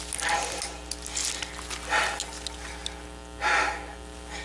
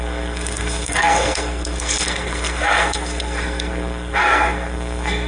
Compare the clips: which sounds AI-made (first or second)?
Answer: second